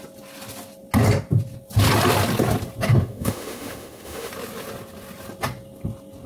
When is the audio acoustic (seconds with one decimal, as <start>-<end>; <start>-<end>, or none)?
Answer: 0.0-2.9; 4.3-6.3